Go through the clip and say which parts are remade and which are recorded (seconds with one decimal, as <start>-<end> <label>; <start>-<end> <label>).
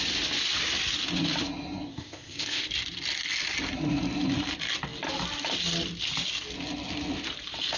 0.0-1.9 recorded; 1.9-2.7 remade; 2.7-7.8 recorded